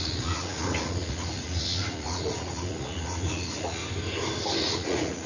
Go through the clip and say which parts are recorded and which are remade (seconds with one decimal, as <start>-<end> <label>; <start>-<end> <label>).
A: 0.0-3.8 remade; 3.8-4.6 recorded; 4.6-5.3 remade